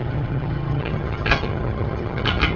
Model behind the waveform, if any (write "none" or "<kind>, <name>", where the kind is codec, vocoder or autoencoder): vocoder, HiFi-GAN